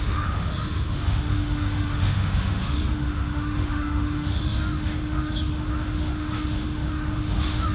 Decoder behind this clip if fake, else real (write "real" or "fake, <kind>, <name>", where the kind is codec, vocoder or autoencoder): fake, autoencoder, DAC-VAE